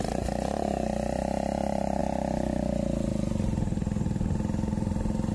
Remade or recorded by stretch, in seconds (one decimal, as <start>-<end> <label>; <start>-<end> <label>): 0.0-5.3 recorded